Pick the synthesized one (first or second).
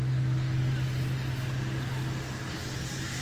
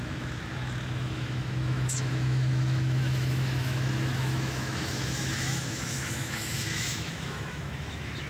second